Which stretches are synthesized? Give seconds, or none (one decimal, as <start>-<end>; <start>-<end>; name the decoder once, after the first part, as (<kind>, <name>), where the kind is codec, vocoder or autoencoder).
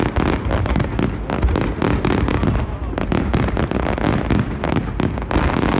none